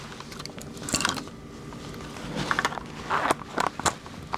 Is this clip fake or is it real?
real